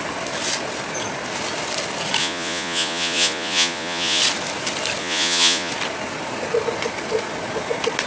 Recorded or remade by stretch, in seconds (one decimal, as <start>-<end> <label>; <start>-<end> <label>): 0.0-2.2 recorded; 2.2-4.2 remade; 4.2-5.0 recorded; 5.0-5.7 remade; 5.7-8.1 recorded